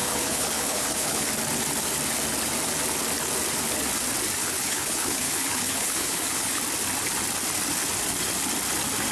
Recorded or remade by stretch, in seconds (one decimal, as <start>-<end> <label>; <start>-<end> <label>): 0.0-1.3 remade; 1.3-4.4 recorded; 4.4-6.6 remade; 6.6-9.1 recorded